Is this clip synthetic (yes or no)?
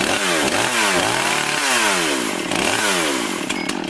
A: no